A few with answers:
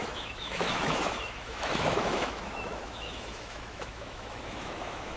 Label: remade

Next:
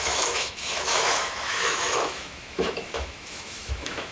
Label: remade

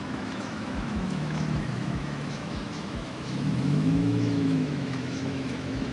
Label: remade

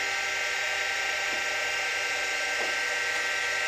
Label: recorded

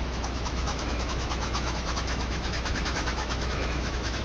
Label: remade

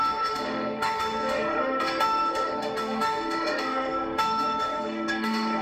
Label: remade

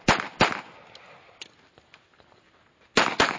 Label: recorded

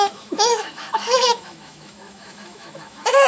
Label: remade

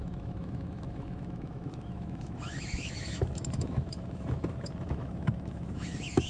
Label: remade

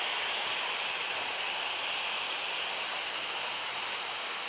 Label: recorded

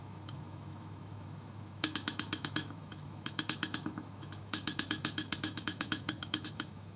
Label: remade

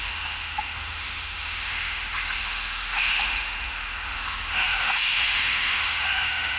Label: remade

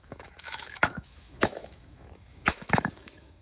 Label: remade